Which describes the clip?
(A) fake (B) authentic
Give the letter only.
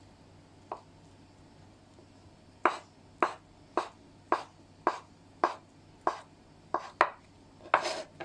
B